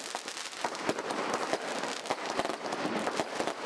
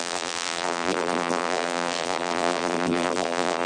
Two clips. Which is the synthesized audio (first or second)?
second